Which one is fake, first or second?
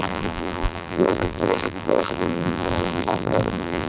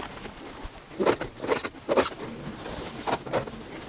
first